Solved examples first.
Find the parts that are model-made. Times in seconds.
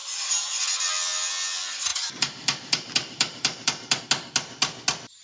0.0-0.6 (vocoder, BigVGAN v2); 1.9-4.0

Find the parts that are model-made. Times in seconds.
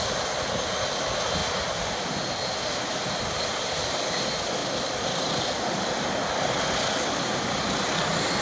none